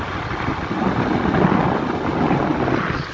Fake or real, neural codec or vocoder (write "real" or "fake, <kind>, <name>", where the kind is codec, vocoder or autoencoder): real